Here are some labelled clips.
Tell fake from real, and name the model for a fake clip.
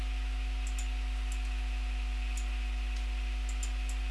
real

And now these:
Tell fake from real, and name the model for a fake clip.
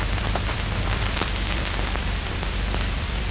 fake, vocoder, BigVGAN v2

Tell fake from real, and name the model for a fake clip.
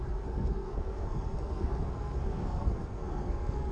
fake, codec, SNAC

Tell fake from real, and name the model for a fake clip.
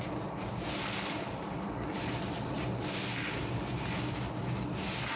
real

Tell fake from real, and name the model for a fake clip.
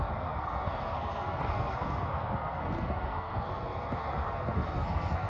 fake, codec, SNAC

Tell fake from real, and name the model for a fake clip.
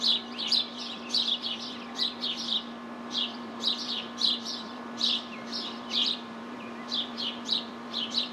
fake, vocoder, BigVGAN v2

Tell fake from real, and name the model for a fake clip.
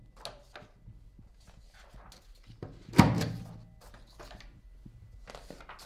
real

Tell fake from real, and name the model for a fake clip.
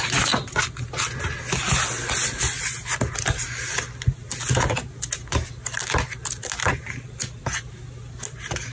real